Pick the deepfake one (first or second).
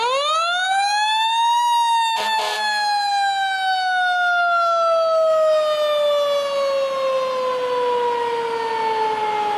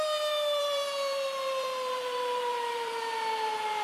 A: second